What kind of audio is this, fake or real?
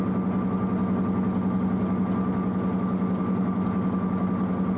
real